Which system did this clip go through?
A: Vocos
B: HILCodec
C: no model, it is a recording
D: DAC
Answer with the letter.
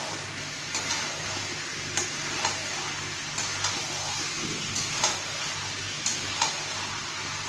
C